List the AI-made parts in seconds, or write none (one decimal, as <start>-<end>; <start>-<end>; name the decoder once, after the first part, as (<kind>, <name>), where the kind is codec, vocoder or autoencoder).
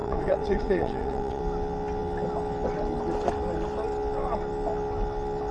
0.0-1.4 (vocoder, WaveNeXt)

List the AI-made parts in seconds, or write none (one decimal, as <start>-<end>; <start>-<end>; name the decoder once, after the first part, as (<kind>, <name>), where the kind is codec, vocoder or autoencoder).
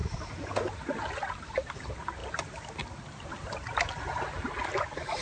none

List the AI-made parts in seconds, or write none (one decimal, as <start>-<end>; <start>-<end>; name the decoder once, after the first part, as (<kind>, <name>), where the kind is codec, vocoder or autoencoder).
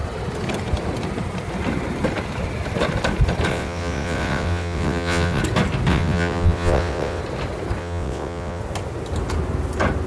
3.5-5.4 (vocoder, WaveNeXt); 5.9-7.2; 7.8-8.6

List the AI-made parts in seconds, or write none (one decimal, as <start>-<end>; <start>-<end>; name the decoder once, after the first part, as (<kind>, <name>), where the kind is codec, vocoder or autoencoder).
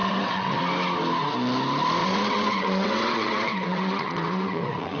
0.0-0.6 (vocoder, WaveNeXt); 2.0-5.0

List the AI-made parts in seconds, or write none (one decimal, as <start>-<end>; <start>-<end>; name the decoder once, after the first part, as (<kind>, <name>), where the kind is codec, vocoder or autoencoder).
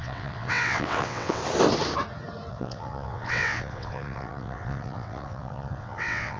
0.0-1.4 (vocoder, WaveNeXt); 2.5-6.4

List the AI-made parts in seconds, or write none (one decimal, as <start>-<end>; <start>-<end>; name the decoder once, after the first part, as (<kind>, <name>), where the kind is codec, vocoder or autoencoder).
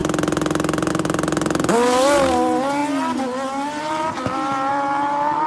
none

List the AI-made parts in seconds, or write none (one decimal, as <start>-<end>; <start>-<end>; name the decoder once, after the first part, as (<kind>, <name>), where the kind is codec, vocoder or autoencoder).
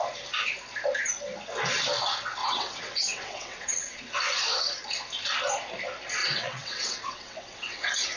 2.4-4.0 (vocoder, WaveNeXt); 6.2-8.2